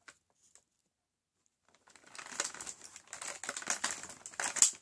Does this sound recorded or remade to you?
recorded